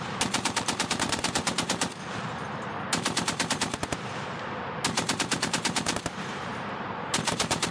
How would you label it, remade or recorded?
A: remade